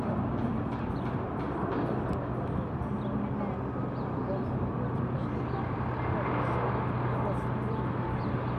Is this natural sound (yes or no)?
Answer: yes